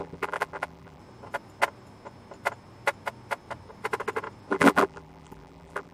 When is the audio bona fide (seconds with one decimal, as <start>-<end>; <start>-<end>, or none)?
1.0-4.5